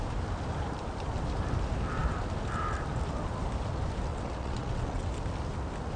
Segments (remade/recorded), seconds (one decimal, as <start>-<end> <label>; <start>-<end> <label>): 0.0-4.1 recorded; 4.1-5.1 remade; 5.1-6.0 recorded